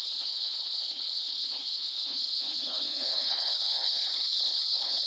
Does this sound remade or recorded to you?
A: remade